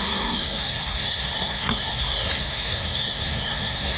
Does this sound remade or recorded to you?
remade